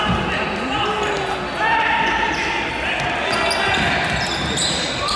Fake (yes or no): no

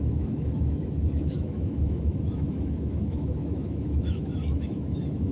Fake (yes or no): yes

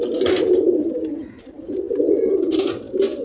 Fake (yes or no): no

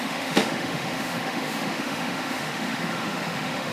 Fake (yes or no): yes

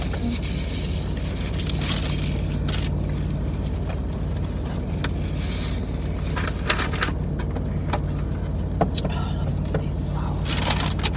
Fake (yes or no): no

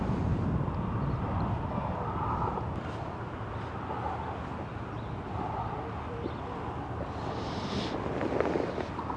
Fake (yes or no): no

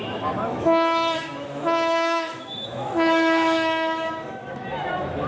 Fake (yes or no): yes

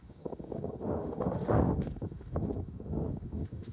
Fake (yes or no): yes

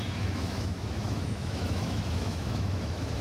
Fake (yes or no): yes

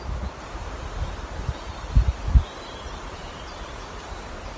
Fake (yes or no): no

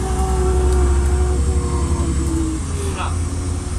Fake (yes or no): no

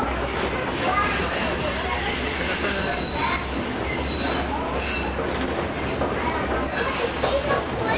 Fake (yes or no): no